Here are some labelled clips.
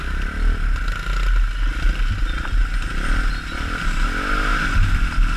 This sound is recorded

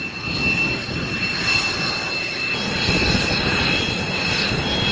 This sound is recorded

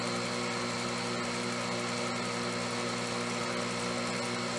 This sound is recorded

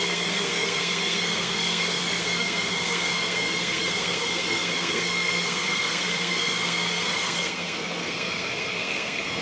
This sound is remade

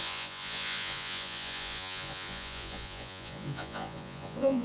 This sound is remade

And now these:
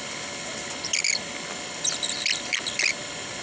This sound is recorded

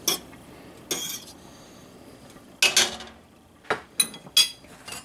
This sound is recorded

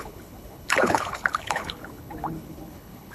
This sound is remade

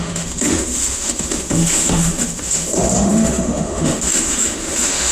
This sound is remade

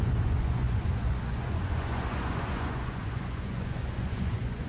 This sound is remade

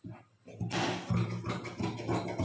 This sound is recorded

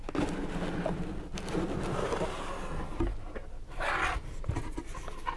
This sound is recorded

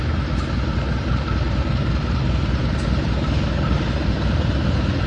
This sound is recorded